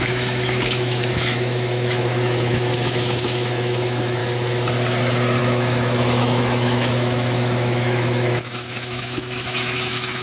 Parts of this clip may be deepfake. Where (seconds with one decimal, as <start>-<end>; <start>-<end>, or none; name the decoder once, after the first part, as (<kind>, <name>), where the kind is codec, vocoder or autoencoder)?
0.0-4.2 (autoencoder, DAC-VAE); 5.4-10.2